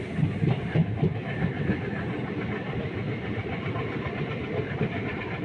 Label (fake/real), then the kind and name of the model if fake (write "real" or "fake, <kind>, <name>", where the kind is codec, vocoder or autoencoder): real